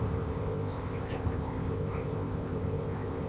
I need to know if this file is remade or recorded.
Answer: remade